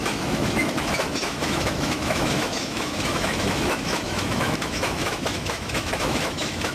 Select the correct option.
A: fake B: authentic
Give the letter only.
A